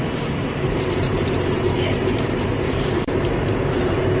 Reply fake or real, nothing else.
fake